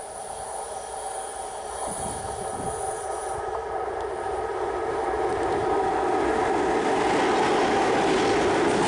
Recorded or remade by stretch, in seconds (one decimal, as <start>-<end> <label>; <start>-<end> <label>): 0.0-8.9 recorded